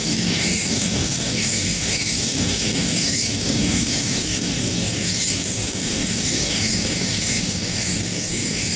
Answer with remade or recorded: remade